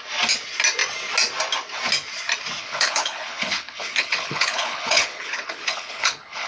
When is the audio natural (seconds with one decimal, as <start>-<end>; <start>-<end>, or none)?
0.0-2.6